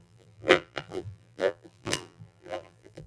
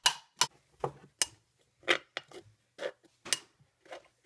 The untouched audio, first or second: second